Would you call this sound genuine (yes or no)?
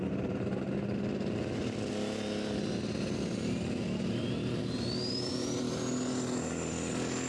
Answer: yes